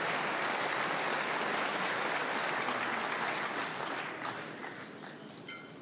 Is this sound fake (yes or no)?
no